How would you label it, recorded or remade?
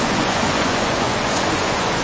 remade